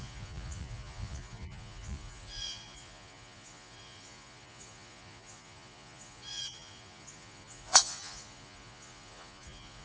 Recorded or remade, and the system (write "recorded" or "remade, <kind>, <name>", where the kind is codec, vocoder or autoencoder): remade, vocoder, Vocos